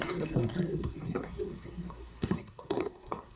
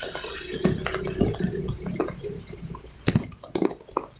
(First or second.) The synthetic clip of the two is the first